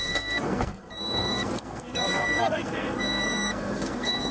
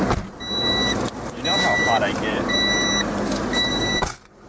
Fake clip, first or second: first